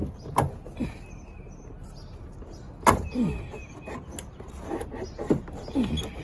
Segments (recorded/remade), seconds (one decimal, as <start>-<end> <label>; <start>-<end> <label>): 0.0-6.2 recorded